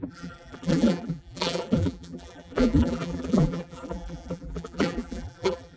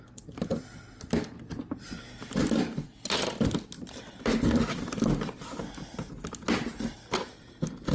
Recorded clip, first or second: second